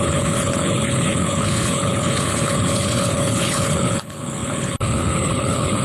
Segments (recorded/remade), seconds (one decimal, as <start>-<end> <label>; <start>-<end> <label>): 0.0-5.8 remade